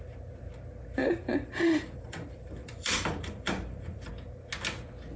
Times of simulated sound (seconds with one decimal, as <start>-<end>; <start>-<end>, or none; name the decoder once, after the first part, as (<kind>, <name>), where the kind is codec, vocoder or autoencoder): 1.0-4.1 (vocoder, BigVGAN v2)